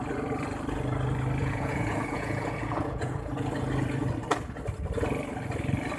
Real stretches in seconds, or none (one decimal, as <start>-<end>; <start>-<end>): 0.0-1.4; 3.2-6.0